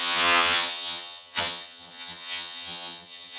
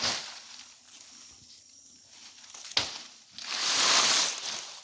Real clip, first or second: second